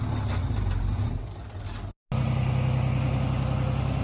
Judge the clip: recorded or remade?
recorded